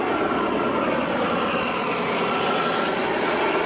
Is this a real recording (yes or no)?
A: yes